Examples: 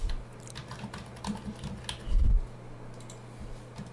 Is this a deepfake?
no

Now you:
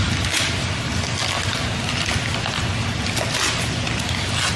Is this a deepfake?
no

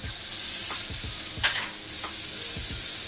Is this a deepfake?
no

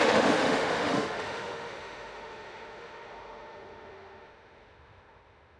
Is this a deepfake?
yes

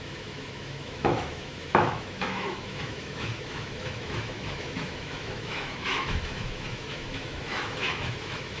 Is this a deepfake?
yes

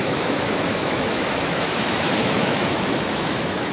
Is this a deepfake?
yes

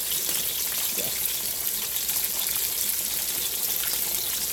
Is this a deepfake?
no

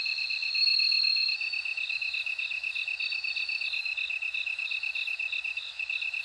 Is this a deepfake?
yes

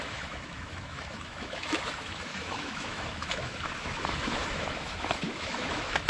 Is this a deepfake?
yes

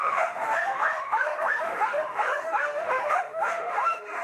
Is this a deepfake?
yes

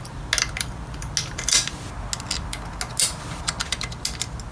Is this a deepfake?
no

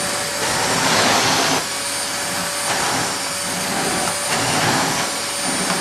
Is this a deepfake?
no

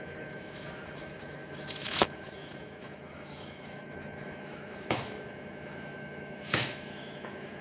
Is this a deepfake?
yes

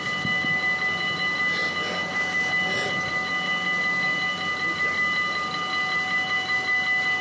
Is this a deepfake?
no